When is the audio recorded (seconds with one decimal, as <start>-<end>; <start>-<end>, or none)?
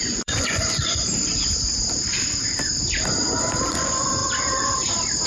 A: 1.0-3.7; 4.2-5.3